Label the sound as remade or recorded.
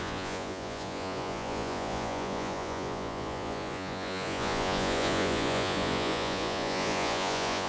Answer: remade